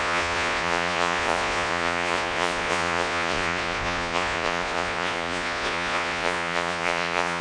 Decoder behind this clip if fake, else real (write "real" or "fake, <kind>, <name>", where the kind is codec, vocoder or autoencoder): fake, vocoder, Vocos